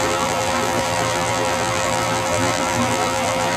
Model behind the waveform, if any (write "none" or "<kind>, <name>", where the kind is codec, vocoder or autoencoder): vocoder, BigVGAN v2